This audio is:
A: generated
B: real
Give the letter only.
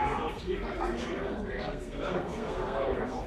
A